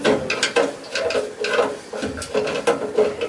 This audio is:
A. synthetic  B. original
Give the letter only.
B